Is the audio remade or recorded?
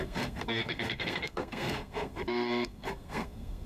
remade